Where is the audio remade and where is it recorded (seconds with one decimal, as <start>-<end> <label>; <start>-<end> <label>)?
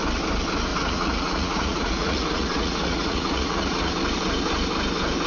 0.0-0.7 recorded; 0.7-3.9 remade; 3.9-5.3 recorded